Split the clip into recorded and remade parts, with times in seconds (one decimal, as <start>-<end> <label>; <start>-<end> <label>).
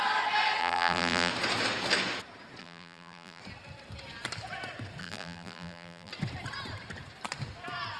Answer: 0.0-0.6 recorded; 0.6-1.3 remade; 1.3-2.6 recorded; 2.6-3.4 remade; 3.4-5.0 recorded; 5.0-6.1 remade; 6.1-8.0 recorded